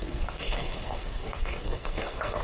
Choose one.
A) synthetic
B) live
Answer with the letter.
A